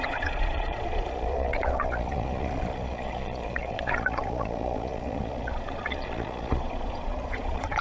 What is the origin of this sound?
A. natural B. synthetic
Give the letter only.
B